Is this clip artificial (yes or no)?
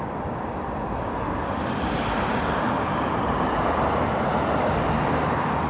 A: yes